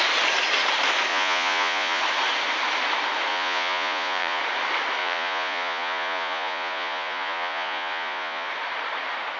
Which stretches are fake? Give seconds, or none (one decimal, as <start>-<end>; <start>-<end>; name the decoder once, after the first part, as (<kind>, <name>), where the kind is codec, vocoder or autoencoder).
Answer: 1.1-2.0 (vocoder, Vocos); 3.3-4.4; 5.0-8.5